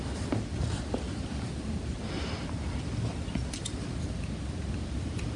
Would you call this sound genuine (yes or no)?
yes